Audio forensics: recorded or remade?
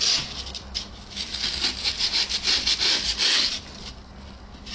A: recorded